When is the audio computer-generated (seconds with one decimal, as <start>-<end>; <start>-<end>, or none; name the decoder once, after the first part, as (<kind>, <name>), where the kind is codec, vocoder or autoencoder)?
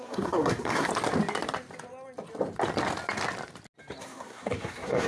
0.0-0.9 (codec, SNAC); 4.0-5.1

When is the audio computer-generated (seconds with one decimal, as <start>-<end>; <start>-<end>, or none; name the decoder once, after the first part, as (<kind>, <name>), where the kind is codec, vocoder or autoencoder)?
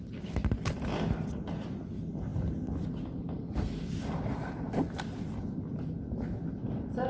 none